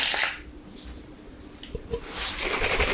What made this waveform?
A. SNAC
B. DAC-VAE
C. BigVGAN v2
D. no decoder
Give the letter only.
D